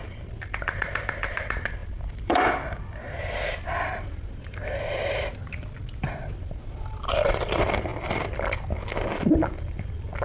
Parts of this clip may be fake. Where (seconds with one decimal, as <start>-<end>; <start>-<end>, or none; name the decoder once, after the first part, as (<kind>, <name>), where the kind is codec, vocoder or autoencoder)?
0.0-5.3 (vocoder, BigVGAN v2); 6.0-10.2